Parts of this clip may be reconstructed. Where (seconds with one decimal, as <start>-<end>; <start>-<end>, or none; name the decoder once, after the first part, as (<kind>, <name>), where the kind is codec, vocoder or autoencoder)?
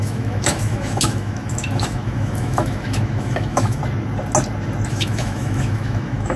0.0-3.8 (autoencoder, DAC-VAE); 4.9-6.4